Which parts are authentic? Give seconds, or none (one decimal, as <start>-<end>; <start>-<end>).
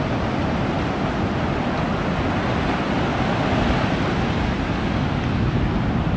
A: 0.0-6.2